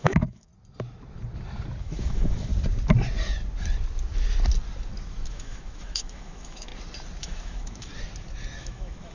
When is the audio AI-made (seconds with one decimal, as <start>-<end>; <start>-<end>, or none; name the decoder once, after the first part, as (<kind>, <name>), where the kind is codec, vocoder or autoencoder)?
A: 0.0-0.5 (autoencoder, DAC-VAE); 1.8-2.5; 5.3-6.7; 7.2-7.9; 8.6-9.1